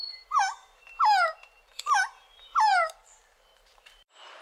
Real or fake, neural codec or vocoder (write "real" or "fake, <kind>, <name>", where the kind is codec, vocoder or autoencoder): fake, vocoder, BigVGAN v2